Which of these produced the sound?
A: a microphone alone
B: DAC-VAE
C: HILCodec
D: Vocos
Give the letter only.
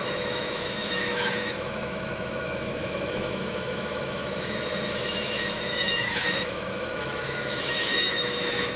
B